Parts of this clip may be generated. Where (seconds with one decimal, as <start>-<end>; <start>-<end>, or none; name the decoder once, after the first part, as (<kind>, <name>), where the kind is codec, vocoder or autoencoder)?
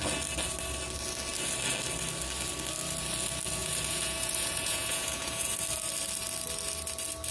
3.6-5.5 (vocoder, Vocos)